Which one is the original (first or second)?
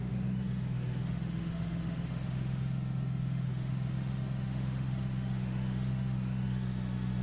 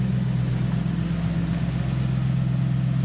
second